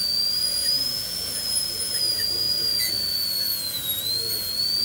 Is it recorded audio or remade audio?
remade